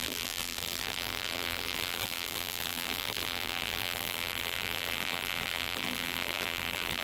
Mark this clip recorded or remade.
remade